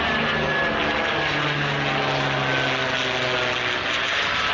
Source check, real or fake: real